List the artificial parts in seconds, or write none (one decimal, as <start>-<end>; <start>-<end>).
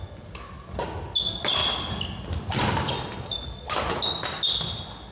none